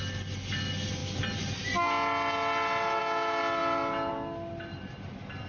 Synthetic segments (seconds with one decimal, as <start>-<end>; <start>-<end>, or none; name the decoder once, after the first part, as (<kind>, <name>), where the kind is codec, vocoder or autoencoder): none